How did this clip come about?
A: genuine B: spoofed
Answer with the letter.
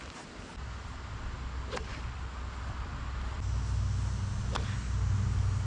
A